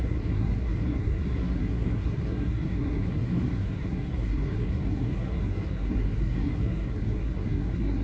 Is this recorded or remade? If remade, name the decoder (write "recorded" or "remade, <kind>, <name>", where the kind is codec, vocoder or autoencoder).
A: remade, codec, SNAC